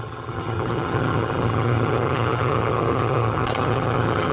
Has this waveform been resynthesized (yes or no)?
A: yes